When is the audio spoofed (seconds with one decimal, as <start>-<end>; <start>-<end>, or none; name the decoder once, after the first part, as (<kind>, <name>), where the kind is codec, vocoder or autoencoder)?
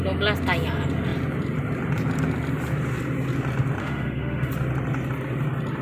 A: 3.8-4.5 (autoencoder, DAC-VAE)